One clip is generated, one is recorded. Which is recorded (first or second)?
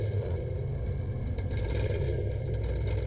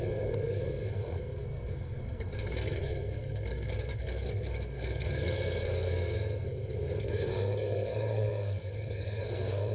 first